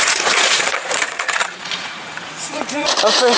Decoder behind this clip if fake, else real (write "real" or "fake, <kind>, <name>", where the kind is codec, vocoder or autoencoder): fake, vocoder, Vocos